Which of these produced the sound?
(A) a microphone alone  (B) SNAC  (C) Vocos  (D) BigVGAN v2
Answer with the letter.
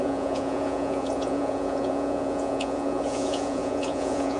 C